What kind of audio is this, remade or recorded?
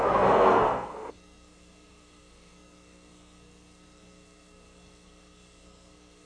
remade